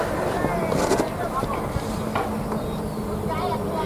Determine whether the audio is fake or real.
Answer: real